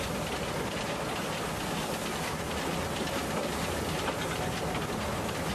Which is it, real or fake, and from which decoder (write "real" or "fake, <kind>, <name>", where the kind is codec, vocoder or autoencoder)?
real